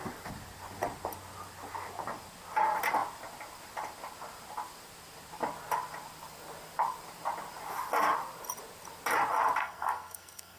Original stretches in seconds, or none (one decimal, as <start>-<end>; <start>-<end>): 0.0-9.6